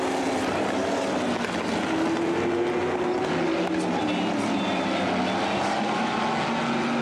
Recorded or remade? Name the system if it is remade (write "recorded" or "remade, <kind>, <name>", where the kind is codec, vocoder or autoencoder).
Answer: recorded